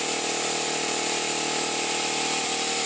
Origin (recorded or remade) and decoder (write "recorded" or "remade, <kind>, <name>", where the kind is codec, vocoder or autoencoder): remade, vocoder, BigVGAN v2